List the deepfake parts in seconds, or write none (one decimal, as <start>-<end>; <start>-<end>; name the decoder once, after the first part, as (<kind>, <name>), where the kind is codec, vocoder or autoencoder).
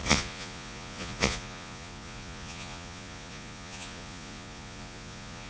0.0-5.5 (vocoder, Vocos)